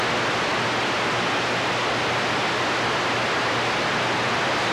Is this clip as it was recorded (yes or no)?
yes